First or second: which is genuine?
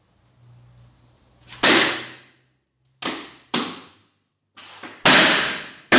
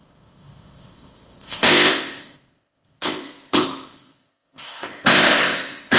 first